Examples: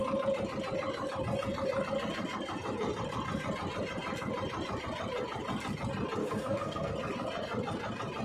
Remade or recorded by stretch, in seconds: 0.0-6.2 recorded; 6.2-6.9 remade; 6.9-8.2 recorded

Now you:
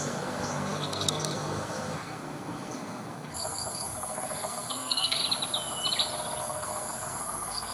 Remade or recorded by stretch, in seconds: 0.0-5.2 remade; 5.2-6.4 recorded; 6.4-7.7 remade

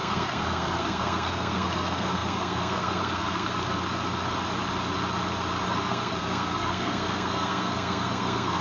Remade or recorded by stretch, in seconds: 0.0-3.6 remade; 3.6-5.7 recorded; 5.7-8.6 remade

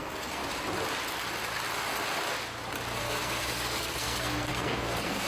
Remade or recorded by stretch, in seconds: 0.0-0.4 remade; 0.4-3.0 recorded; 3.0-5.3 remade

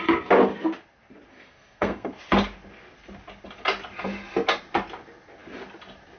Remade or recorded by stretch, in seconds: 0.0-1.3 recorded; 1.3-2.1 remade; 2.1-6.2 recorded

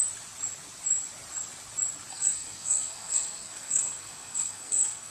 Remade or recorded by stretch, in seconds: 0.0-2.1 recorded; 2.1-5.1 remade

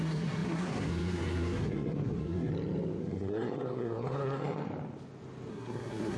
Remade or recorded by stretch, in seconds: 0.0-2.5 remade; 2.5-3.0 recorded; 3.0-4.7 remade; 4.7-5.5 recorded; 5.5-6.2 remade

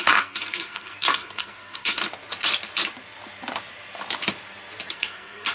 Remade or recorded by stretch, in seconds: 0.0-2.0 remade; 2.0-4.9 recorded; 4.9-5.5 remade